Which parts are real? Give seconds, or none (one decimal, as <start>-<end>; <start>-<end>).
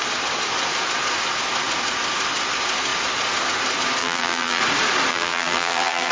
0.0-4.0; 4.6-5.1